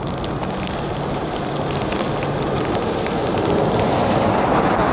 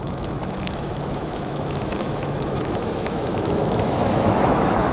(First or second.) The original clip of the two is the first